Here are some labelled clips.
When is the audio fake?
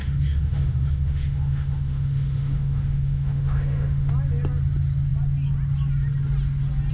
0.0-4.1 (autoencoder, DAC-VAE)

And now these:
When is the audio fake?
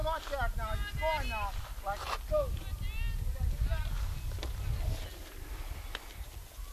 none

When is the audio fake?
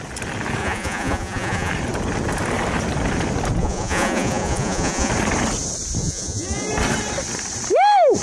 0.6-1.7 (vocoder, Vocos); 3.6-5.1; 6.0-6.7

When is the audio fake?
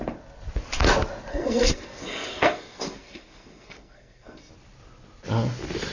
1.3-4.5 (codec, SNAC)